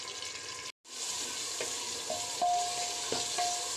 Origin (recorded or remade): recorded